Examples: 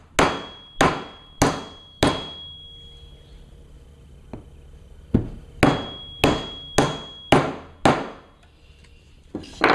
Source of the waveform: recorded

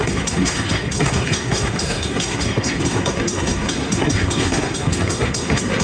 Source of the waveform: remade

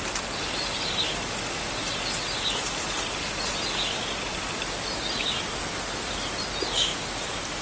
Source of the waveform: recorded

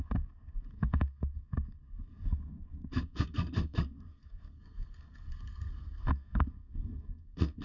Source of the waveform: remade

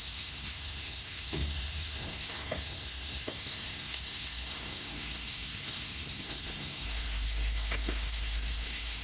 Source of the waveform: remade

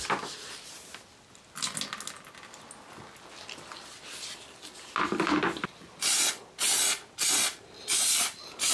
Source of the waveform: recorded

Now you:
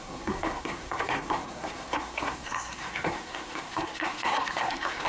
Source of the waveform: remade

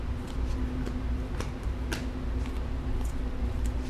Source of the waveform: recorded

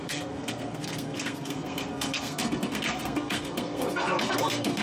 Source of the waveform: remade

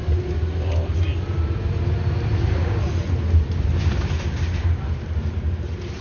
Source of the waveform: recorded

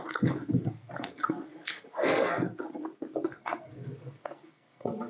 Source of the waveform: remade